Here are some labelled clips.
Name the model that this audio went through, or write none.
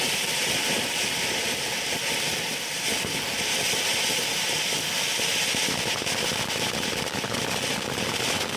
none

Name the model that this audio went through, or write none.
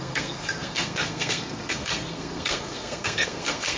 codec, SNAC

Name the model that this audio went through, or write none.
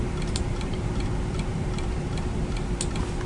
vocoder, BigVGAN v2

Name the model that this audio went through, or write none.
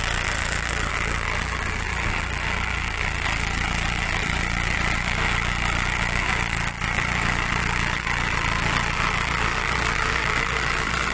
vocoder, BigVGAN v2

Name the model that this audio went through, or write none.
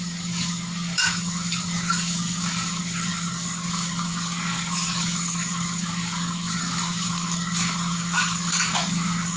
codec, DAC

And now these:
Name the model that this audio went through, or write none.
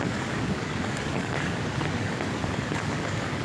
codec, DAC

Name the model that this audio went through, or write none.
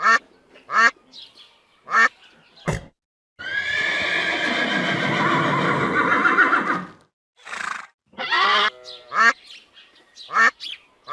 none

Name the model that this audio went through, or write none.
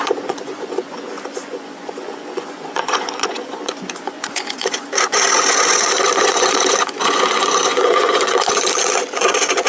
vocoder, Vocos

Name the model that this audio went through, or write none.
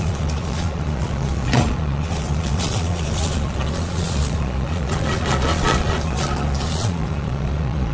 vocoder, Vocos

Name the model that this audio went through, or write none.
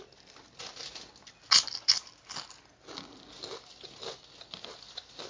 none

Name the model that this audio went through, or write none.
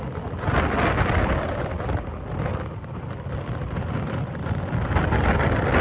none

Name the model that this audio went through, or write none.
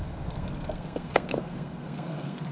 codec, SNAC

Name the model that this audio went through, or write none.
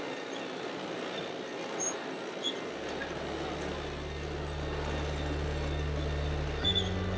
none